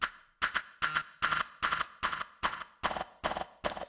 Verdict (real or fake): real